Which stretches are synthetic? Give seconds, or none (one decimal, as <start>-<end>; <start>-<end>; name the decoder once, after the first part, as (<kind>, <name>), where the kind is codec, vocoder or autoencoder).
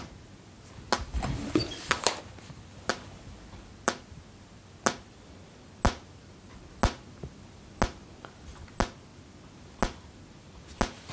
none